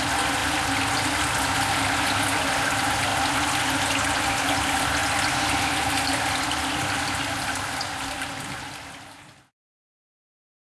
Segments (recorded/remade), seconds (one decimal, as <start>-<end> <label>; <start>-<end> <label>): 0.0-10.7 recorded